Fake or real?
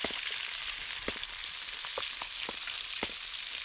real